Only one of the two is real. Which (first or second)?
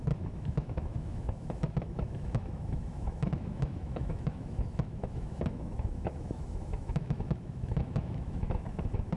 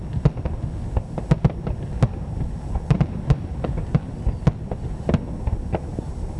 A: second